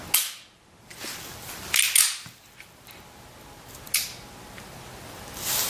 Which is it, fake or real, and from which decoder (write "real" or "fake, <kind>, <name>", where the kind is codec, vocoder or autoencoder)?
real